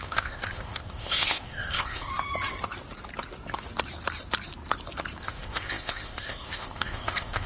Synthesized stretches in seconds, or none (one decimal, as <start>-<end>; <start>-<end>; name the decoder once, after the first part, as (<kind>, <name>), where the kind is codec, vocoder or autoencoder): 0.0-2.1 (codec, ZipCodec); 5.2-7.5